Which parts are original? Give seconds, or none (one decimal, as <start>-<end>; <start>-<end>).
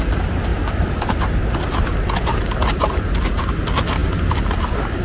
0.0-0.5; 3.5-5.0